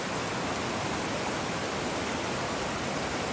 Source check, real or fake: real